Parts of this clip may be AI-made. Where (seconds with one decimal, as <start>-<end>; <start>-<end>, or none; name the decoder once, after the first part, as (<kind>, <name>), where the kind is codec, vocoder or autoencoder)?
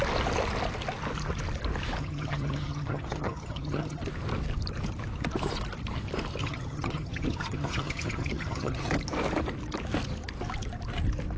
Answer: 2.0-4.0 (vocoder, HiFi-GAN); 6.4-8.9